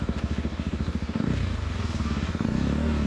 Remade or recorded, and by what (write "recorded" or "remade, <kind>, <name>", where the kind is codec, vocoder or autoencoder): remade, codec, DAC